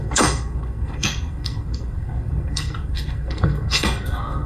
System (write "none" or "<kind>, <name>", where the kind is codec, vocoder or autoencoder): codec, SNAC